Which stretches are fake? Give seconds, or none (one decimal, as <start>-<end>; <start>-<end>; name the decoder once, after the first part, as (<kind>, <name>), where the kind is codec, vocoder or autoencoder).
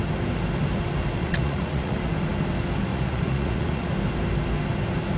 1.2-2.1 (vocoder, Vocos); 2.9-3.9